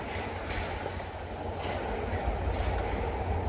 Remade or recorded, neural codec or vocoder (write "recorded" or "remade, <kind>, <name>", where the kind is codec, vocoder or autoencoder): recorded